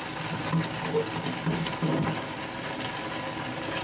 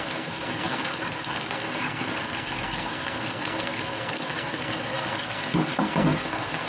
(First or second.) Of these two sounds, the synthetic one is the second